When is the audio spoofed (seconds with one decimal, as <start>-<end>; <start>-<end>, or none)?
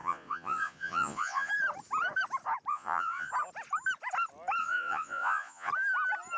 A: 0.0-1.5; 2.7-3.3; 4.6-5.7